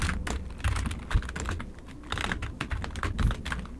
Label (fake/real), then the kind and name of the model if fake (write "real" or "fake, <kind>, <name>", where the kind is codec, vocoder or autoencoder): real